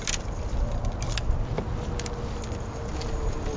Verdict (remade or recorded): remade